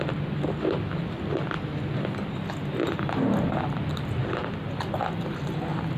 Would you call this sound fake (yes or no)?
no